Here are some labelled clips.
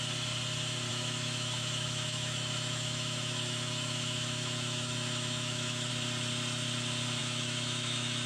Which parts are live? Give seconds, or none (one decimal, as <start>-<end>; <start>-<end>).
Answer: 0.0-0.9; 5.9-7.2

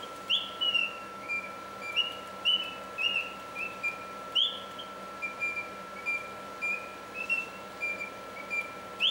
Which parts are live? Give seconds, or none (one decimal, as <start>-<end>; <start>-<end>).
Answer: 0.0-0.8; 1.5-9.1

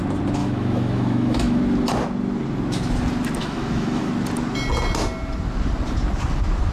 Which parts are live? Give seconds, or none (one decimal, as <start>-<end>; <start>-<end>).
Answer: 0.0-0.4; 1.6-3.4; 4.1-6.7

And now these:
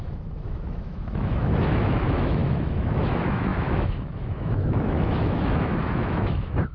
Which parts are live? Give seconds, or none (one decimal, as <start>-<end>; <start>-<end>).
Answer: none

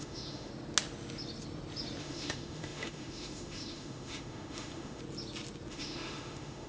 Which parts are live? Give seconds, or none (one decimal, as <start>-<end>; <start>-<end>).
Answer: 0.5-2.0; 5.0-5.7